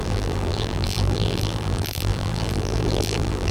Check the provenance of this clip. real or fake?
fake